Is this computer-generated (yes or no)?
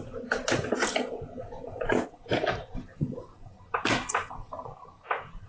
no